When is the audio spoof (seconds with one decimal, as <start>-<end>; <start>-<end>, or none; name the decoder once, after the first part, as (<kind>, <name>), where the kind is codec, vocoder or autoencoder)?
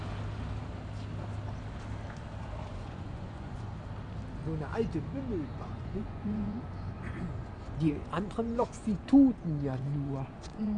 2.7-3.7 (vocoder, Vocos); 5.5-10.8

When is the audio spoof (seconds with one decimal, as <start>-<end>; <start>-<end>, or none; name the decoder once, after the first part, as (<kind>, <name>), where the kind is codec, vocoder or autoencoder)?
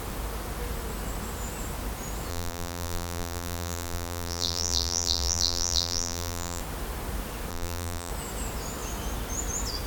2.3-6.6 (vocoder, BigVGAN v2); 7.5-8.1